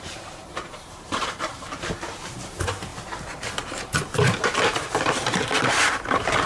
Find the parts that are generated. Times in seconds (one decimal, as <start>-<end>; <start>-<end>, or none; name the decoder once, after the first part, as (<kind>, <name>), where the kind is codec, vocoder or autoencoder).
0.0-2.9 (vocoder, BigVGAN v2); 4.4-6.5